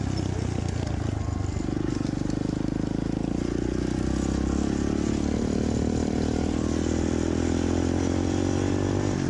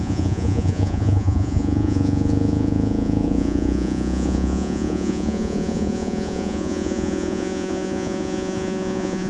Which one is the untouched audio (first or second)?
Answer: first